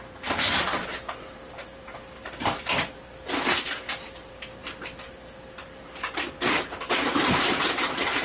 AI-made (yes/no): yes